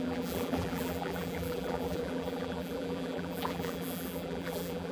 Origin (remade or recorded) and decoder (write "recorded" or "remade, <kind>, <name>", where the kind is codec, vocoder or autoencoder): remade, vocoder, BigVGAN v2